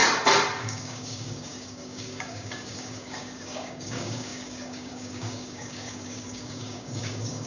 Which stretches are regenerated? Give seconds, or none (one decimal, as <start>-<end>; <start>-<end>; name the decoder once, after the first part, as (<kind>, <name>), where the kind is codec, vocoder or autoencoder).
0.6-7.5 (codec, DAC)